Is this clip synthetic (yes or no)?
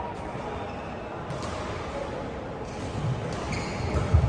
no